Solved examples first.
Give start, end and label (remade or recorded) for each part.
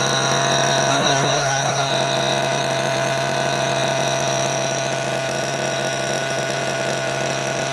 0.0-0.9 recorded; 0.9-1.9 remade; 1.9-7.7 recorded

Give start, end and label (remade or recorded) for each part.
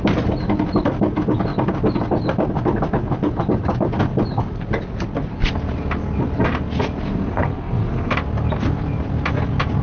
0.0-7.0 recorded; 7.0-8.1 remade; 8.1-9.8 recorded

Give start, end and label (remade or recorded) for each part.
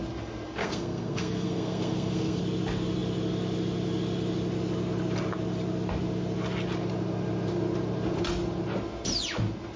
0.0-0.6 recorded; 0.6-2.4 remade; 2.4-9.8 recorded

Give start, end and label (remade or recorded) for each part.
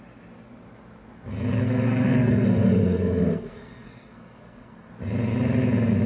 0.0-1.5 recorded; 1.5-4.9 remade; 4.9-6.1 recorded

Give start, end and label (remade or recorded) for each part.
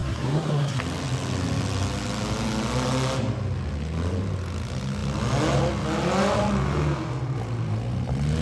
0.0-0.8 remade; 0.8-8.4 recorded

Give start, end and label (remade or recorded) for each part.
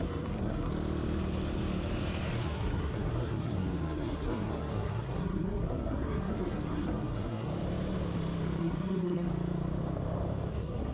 0.0-0.7 remade; 0.7-2.4 recorded; 2.4-7.5 remade; 7.5-8.6 recorded; 8.6-9.3 remade; 9.3-10.5 recorded; 10.5-10.9 remade